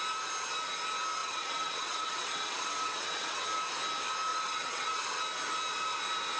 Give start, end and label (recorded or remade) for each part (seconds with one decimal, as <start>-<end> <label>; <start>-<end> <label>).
0.0-1.2 recorded; 1.2-3.4 remade; 3.4-4.3 recorded; 4.3-5.2 remade; 5.2-6.4 recorded